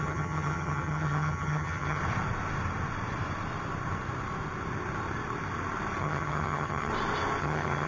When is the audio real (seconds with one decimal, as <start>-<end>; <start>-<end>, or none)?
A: 2.0-6.0; 6.9-7.4